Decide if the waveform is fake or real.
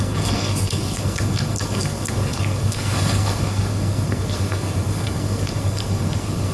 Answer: fake